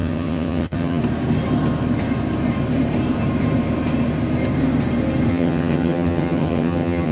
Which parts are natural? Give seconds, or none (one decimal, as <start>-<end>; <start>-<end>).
1.0-5.3